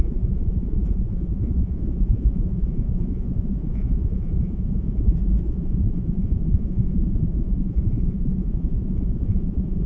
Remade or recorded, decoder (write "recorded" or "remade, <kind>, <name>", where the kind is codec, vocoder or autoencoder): remade, vocoder, Vocos